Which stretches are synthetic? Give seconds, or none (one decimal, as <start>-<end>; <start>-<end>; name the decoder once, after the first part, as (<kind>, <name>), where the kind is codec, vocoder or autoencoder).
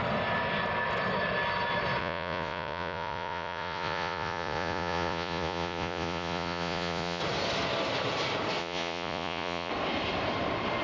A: 2.0-7.2 (vocoder, Vocos); 8.6-9.7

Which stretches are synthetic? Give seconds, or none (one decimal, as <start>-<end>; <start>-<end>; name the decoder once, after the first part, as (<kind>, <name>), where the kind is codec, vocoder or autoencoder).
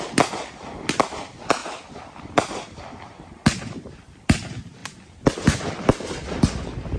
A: none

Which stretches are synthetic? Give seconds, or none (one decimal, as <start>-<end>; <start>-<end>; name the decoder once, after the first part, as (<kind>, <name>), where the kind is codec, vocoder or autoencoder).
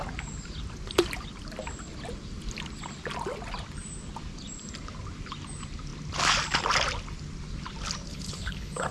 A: 8.1-8.9 (codec, HILCodec)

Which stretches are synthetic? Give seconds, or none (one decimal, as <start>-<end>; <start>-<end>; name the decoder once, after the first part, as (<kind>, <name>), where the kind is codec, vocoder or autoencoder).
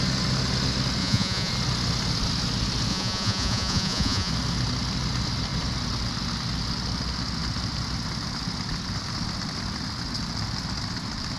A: 1.0-1.5 (vocoder, Vocos); 2.9-4.3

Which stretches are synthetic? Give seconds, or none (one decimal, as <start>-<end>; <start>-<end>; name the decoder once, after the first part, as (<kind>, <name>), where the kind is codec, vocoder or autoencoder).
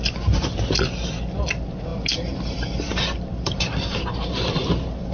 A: none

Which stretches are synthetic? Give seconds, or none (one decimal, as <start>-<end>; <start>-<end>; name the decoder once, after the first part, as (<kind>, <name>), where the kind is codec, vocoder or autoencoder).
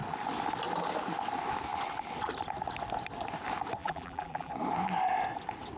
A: 3.8-4.5 (vocoder, BigVGAN v2)